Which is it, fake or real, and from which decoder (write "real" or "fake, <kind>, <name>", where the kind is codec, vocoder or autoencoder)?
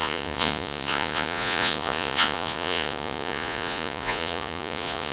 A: fake, vocoder, Vocos